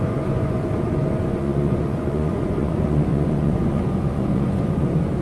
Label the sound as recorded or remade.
remade